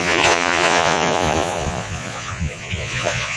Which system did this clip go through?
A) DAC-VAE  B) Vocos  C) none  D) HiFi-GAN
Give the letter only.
B